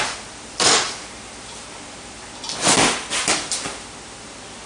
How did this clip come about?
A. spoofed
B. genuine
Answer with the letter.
B